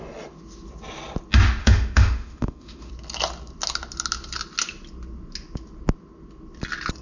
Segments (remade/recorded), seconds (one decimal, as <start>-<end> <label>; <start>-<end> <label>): 0.0-1.6 recorded; 1.6-2.9 remade; 2.9-7.0 recorded